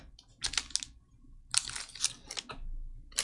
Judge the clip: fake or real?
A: real